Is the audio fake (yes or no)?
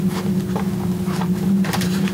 no